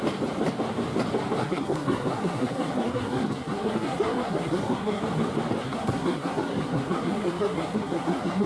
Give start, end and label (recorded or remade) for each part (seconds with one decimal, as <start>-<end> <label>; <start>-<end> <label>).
0.0-1.4 recorded; 1.4-5.0 remade; 5.0-5.6 recorded; 5.6-8.5 remade